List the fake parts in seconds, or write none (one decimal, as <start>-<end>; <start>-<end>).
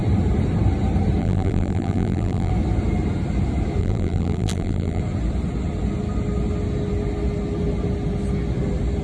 1.2-2.5; 3.8-5.0